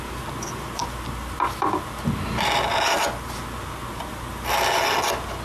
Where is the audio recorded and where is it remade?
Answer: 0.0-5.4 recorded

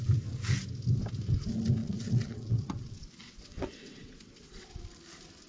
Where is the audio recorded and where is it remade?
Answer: 0.0-1.8 recorded; 1.8-4.8 remade; 4.8-5.5 recorded